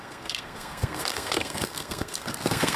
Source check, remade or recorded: remade